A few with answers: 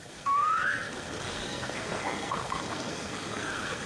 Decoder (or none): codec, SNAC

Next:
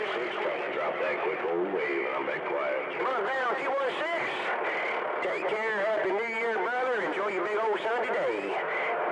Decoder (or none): none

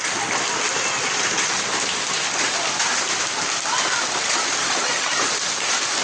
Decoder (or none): none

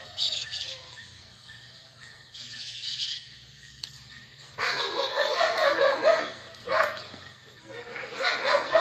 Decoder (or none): codec, SNAC